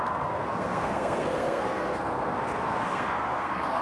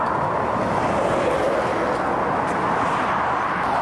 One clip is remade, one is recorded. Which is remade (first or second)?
first